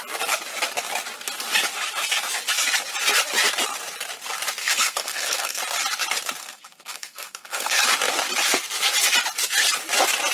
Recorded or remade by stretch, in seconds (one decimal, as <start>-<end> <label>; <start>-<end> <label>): 0.0-4.6 recorded; 4.6-5.6 remade; 5.6-6.4 recorded; 6.4-7.8 remade; 7.8-10.3 recorded